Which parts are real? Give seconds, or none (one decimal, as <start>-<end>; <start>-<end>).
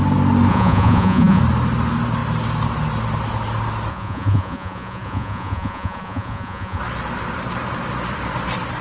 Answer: 0.0-0.5; 1.4-3.9; 6.8-8.8